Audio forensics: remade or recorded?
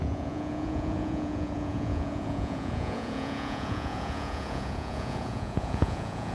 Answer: remade